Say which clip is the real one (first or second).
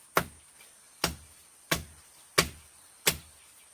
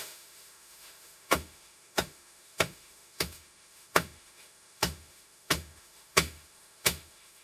first